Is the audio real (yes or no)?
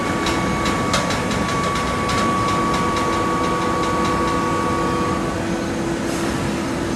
yes